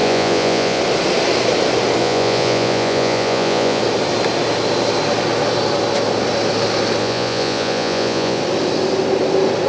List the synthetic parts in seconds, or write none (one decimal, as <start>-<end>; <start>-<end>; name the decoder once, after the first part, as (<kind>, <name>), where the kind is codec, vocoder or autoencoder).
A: 0.0-0.8 (vocoder, Vocos); 2.0-3.8; 7.0-8.4